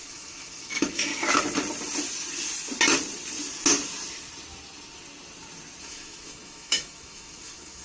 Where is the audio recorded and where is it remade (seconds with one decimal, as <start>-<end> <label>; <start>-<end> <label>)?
0.0-1.1 remade; 1.1-5.8 recorded; 5.8-7.8 remade